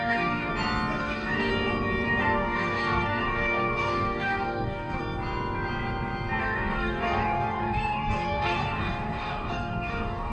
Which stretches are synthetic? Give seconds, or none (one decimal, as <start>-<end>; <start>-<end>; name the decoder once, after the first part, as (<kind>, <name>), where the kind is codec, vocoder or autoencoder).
0.0-0.5 (codec, DAC); 1.0-1.5; 2.2-5.0; 6.4-10.3

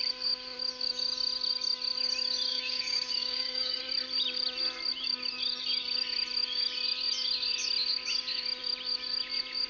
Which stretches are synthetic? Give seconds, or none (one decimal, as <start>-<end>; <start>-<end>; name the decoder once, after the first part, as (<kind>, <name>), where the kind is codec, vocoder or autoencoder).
2.5-3.8 (codec, DAC)

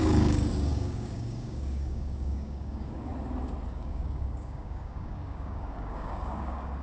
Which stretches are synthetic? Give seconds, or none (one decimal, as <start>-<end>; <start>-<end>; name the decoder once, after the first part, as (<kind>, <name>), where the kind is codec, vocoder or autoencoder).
0.0-3.1 (codec, DAC); 3.7-6.8

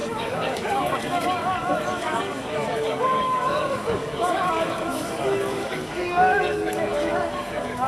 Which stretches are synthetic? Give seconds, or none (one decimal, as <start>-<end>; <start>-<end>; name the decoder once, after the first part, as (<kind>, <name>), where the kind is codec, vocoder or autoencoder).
0.0-7.9 (codec, DAC)